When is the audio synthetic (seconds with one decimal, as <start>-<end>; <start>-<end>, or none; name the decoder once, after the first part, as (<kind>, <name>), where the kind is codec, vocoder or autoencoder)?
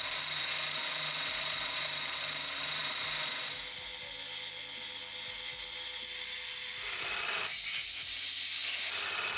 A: none